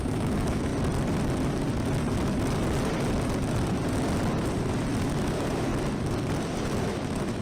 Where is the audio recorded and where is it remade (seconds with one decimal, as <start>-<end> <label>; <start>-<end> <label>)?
0.0-0.7 remade; 0.7-5.1 recorded; 5.1-5.7 remade; 5.7-6.9 recorded; 6.9-7.4 remade